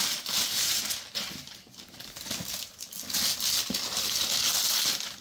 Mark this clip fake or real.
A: real